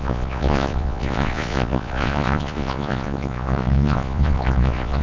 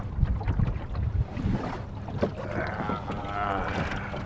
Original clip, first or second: second